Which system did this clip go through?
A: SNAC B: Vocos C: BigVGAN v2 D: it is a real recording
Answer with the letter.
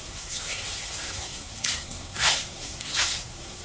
A